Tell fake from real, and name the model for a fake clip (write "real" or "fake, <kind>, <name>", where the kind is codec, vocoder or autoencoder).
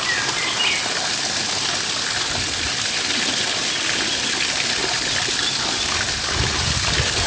real